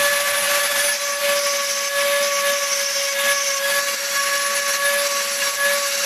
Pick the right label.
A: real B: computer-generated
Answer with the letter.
A